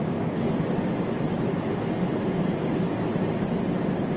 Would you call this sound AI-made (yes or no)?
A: no